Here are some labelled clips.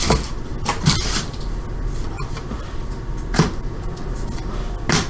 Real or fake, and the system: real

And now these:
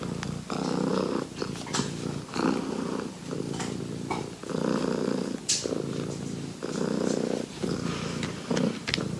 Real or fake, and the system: real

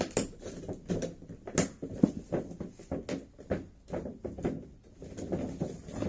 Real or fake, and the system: real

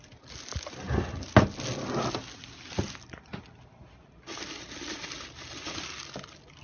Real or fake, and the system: real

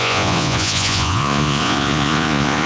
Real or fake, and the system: fake, vocoder, Vocos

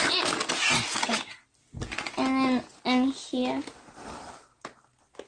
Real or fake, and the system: real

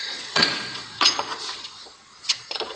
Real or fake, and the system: fake, vocoder, Vocos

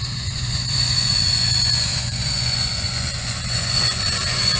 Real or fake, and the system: fake, vocoder, Vocos